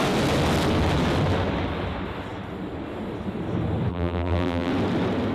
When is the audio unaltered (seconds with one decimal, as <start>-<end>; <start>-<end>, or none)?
0.0-3.9; 4.7-5.3

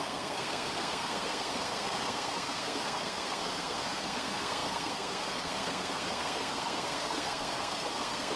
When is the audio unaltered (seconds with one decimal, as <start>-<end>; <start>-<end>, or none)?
none

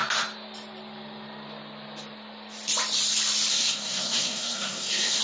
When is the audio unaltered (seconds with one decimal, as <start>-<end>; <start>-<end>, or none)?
0.0-3.5

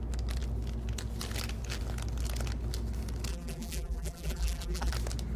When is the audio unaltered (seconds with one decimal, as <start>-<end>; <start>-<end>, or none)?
0.0-3.3; 4.9-5.4

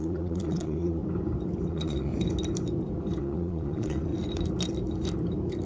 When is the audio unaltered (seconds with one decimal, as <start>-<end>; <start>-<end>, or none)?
1.0-1.7; 2.1-3.2; 4.1-5.7

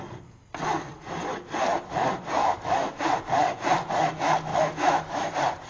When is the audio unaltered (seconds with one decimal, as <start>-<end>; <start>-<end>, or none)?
0.0-2.4; 3.0-4.5; 5.3-5.7

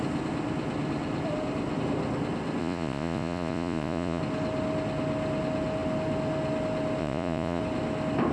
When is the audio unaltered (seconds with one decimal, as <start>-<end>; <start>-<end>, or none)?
0.0-2.6; 4.2-7.0; 7.6-8.3

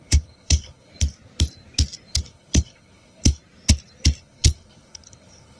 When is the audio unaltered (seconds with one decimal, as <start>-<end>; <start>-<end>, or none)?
0.9-2.1; 3.4-4.2